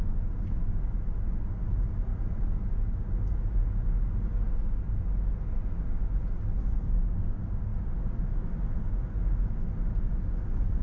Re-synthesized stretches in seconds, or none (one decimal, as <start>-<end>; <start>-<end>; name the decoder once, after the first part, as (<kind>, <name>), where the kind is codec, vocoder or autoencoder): none

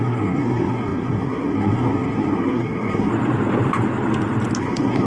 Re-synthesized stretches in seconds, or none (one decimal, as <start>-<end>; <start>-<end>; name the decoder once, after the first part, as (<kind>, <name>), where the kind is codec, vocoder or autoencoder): 0.0-3.1 (codec, SNAC); 4.6-5.1

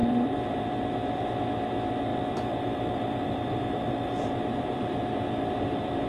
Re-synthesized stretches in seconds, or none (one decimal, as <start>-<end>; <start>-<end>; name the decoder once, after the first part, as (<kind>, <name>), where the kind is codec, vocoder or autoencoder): 0.0-1.2 (vocoder, BigVGAN v2); 2.1-6.1

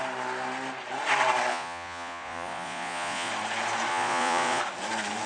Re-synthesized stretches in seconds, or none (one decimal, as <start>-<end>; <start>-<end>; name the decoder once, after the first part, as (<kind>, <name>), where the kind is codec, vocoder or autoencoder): 1.5-3.3 (vocoder, Vocos); 3.9-4.6

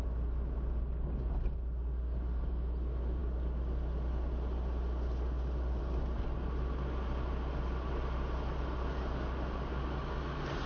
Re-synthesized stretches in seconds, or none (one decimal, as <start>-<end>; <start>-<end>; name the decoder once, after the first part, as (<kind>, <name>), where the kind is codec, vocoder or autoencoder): none